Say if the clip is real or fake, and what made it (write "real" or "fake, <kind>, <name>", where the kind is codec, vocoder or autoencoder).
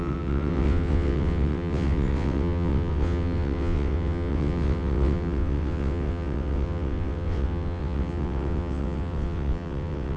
fake, vocoder, WaveNeXt